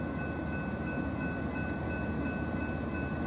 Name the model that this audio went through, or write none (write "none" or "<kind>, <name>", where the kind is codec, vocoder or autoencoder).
none